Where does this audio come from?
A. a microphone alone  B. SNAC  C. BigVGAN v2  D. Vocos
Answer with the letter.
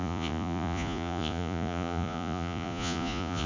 D